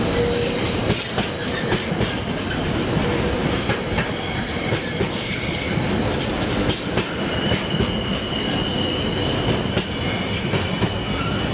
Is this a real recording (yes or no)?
yes